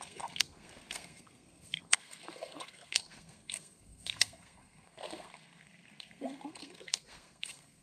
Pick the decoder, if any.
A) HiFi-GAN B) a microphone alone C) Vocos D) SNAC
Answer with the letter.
D